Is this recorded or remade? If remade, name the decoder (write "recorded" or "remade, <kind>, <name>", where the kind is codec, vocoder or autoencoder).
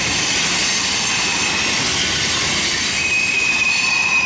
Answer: recorded